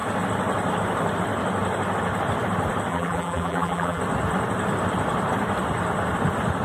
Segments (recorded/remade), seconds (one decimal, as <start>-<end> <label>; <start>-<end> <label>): 0.0-2.9 recorded; 2.9-4.0 remade; 4.0-6.6 recorded